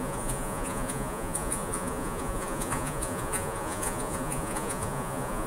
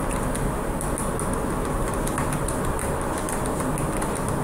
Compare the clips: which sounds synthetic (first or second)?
first